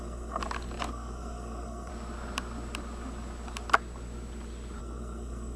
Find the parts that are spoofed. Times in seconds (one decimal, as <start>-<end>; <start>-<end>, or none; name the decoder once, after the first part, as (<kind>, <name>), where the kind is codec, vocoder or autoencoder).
0.0-0.4 (codec, SNAC); 0.9-1.9; 4.8-5.6